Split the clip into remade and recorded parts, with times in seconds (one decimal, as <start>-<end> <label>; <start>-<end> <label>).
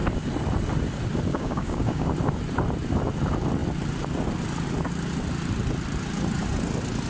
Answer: 0.0-1.3 recorded; 1.3-2.1 remade; 2.1-7.1 recorded